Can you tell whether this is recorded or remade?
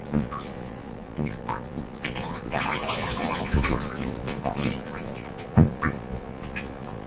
remade